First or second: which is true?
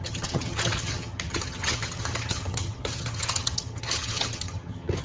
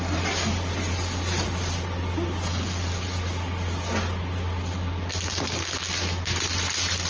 second